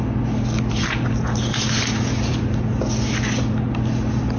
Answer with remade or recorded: recorded